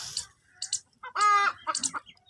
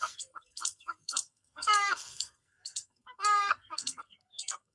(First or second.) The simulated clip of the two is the second